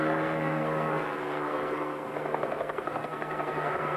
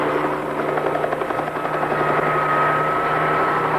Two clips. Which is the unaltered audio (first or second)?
second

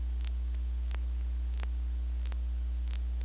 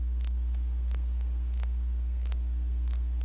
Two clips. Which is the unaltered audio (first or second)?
first